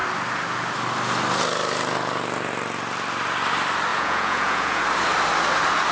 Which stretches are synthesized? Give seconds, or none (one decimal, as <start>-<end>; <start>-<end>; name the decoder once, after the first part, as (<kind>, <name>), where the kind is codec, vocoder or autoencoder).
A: 3.9-4.8 (vocoder, Vocos)